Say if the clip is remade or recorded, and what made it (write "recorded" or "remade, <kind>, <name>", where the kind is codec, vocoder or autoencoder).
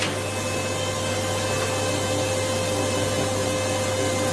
recorded